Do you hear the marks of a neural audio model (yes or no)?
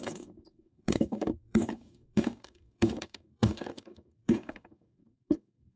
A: yes